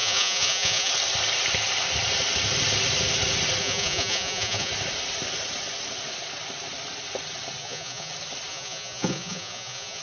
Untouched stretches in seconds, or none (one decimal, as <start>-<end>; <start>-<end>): 0.9-3.6; 4.7-7.6; 8.1-8.5